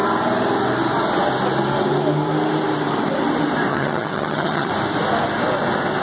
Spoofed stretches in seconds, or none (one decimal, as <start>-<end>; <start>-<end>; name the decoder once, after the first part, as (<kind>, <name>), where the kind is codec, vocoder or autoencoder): 3.7-4.7 (vocoder, HiFi-GAN)